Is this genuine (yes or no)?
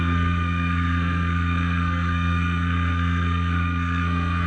no